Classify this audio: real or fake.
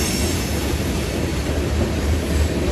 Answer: real